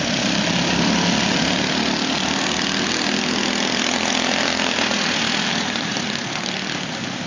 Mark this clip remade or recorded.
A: recorded